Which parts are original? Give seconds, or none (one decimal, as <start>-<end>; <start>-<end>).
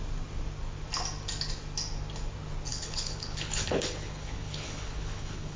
0.0-2.7